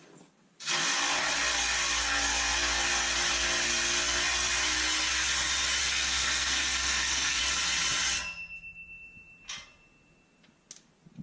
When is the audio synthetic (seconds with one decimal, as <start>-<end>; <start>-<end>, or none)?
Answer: 5.8-7.4